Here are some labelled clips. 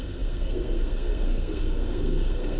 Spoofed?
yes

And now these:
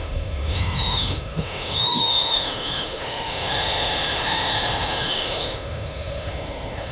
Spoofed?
yes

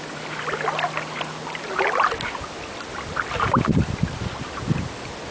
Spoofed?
no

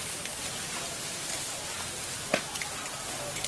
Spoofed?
no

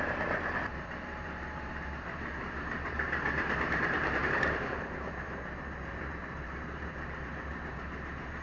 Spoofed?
yes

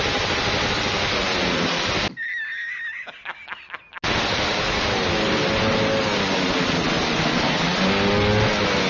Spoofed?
no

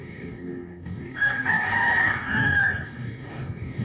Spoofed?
yes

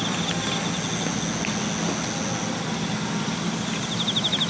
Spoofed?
no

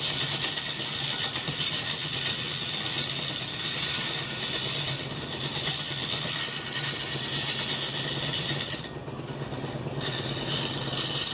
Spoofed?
no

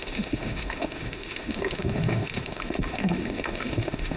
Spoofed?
yes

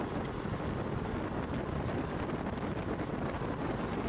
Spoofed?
no